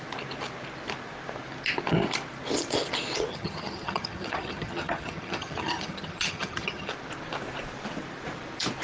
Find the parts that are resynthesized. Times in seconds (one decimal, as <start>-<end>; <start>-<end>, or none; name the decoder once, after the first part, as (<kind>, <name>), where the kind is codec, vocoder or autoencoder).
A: 3.3-6.9 (vocoder, HiFi-GAN)